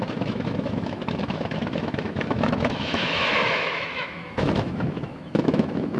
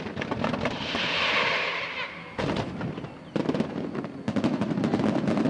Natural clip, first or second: second